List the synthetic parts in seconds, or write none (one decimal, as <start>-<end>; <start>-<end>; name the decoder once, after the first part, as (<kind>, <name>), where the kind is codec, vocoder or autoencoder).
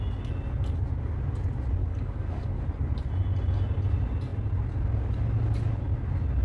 1.8-2.6 (codec, DAC)